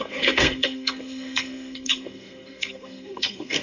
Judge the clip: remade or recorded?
remade